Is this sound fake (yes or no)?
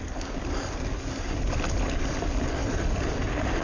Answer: no